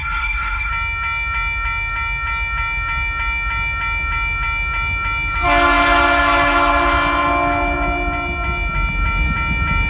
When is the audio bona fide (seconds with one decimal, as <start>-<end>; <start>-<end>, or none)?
0.7-9.9